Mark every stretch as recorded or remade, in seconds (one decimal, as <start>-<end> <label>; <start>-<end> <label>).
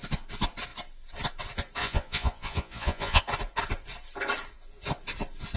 0.0-1.8 recorded; 1.8-3.2 remade; 3.2-5.6 recorded